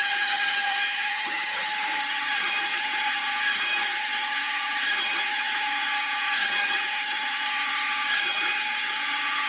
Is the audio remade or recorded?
remade